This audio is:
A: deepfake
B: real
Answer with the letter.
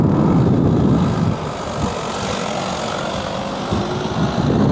B